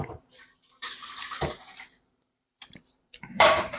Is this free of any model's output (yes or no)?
no